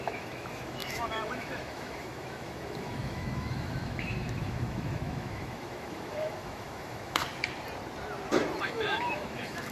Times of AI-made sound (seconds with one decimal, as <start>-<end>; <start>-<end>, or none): 0.0-7.2; 8.6-9.7